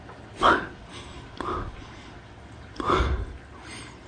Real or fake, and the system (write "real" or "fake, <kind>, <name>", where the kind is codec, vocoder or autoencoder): real